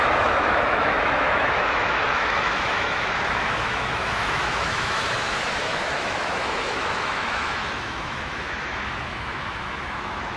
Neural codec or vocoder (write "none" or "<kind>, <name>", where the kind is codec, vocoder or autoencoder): autoencoder, DAC-VAE